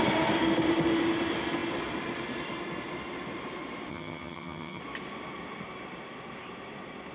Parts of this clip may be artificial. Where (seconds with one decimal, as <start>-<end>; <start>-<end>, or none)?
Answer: 3.9-4.8